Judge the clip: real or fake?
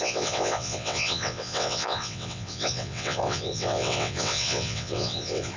fake